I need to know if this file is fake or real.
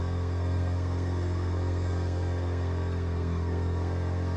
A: fake